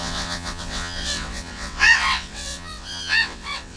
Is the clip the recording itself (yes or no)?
no